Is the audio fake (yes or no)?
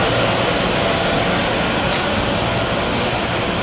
no